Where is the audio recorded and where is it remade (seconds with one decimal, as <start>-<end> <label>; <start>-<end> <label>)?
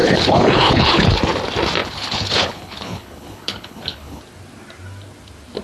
0.0-1.2 remade; 1.2-1.8 recorded; 1.8-4.2 remade; 4.2-5.6 recorded